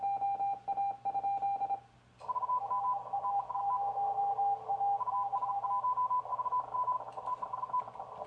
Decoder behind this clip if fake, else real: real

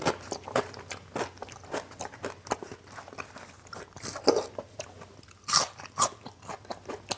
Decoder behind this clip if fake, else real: real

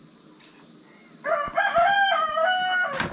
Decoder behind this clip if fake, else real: real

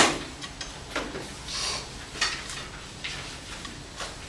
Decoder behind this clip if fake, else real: real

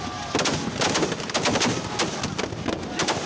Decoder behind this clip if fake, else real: real